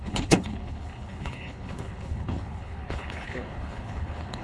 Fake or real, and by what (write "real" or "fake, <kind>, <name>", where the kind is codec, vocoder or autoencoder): fake, codec, HILCodec